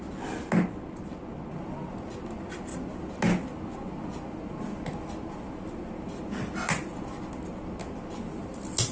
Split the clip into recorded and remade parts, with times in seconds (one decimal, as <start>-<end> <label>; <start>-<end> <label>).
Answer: 0.0-8.9 recorded